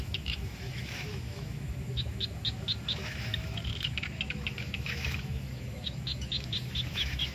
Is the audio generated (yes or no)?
yes